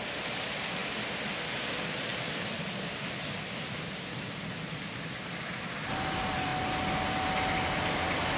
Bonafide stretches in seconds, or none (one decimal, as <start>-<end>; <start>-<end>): 0.0-8.4